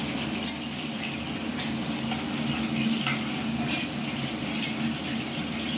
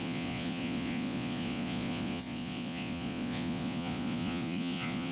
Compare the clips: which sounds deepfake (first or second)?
second